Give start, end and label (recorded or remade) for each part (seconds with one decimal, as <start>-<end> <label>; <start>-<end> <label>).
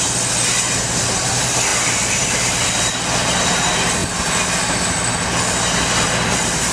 0.0-6.7 recorded